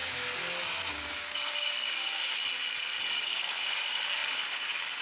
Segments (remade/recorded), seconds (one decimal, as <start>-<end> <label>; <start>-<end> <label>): 0.0-0.9 recorded; 0.9-2.4 remade; 2.4-3.1 recorded; 3.1-5.0 remade